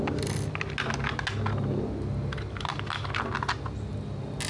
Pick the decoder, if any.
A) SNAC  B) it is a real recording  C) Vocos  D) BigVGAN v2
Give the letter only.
B